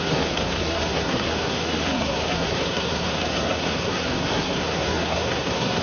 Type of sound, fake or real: fake